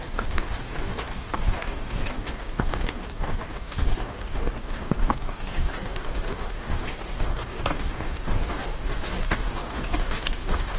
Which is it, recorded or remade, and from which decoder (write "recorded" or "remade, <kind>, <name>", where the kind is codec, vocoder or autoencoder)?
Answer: remade, codec, DAC